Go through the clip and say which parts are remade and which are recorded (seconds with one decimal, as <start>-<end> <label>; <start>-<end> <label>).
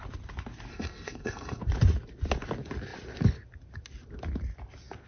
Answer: 0.0-0.7 recorded; 0.7-1.6 remade; 1.6-5.1 recorded